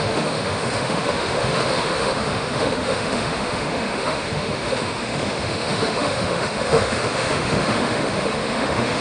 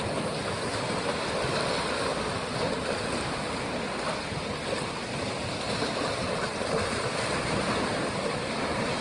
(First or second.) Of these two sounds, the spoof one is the first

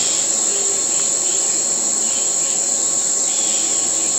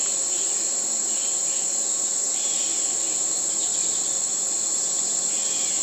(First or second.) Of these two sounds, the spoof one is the second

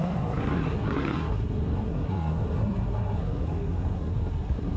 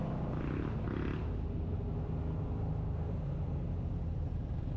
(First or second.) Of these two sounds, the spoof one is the first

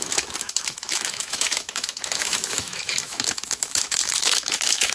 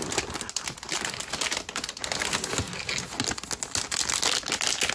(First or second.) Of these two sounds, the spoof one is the first